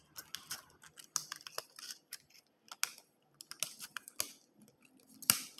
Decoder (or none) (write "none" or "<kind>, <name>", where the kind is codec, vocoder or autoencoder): none